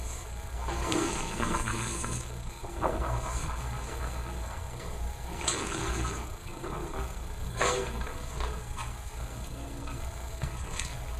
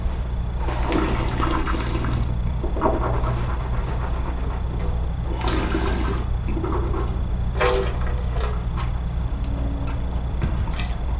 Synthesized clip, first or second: first